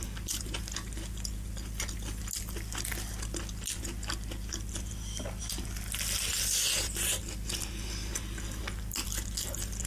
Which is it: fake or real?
real